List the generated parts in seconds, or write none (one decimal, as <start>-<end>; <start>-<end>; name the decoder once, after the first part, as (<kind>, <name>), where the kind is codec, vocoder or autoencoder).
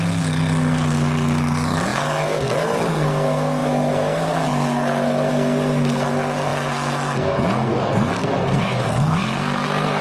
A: 0.0-10.0 (codec, SNAC)